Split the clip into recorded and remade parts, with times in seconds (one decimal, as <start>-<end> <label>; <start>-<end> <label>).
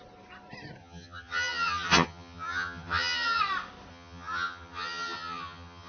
0.0-0.8 recorded; 0.8-3.4 remade; 3.4-3.9 recorded; 3.9-5.9 remade